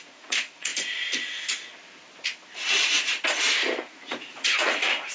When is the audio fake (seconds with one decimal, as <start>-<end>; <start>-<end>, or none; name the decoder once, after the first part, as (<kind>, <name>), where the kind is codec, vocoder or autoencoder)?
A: 0.0-0.7 (vocoder, Vocos); 3.8-5.1